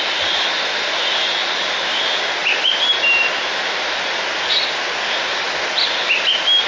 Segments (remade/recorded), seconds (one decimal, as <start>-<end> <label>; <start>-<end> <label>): 0.0-6.7 recorded